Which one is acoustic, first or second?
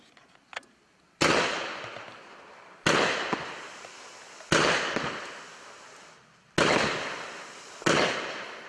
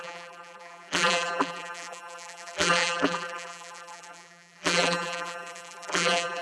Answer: first